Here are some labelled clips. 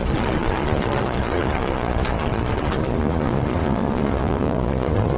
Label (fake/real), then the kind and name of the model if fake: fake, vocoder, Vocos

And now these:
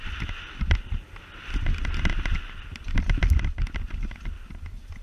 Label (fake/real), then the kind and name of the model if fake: real